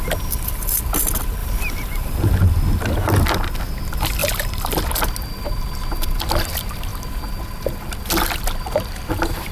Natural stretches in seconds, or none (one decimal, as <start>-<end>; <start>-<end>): 0.0-1.4; 2.3-9.5